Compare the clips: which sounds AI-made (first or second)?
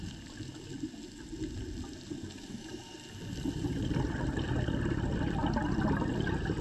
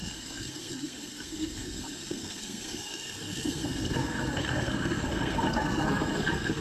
second